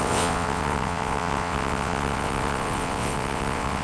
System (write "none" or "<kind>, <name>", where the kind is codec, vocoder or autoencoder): vocoder, WaveNeXt